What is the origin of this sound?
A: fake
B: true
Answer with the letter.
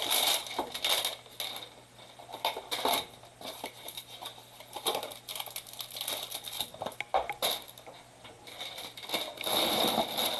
B